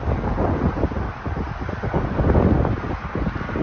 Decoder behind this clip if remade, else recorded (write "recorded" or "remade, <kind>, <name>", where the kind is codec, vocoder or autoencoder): recorded